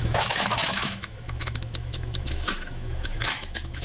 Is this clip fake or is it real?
fake